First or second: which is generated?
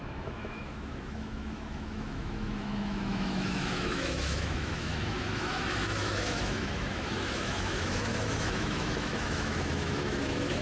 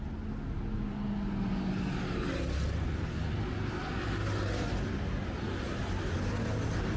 first